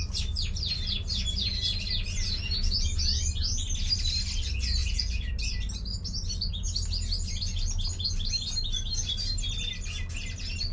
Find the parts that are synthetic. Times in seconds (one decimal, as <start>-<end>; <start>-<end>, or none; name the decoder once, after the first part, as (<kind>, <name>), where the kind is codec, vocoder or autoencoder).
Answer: 4.8-5.3 (vocoder, Vocos)